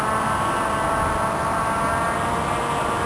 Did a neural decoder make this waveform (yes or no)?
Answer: no